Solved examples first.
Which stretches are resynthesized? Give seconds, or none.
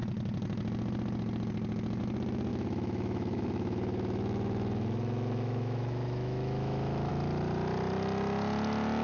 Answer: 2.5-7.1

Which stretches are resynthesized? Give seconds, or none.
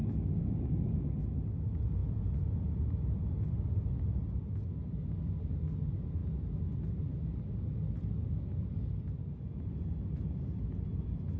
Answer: 0.0-1.2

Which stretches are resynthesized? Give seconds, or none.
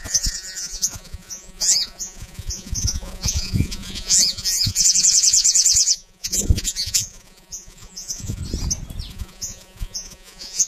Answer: 0.0-8.4; 9.1-10.7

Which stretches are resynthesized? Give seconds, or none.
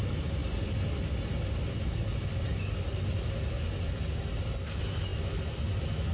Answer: none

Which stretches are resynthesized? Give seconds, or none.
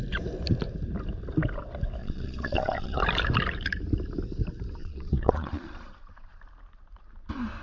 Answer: 2.0-3.0; 4.8-6.4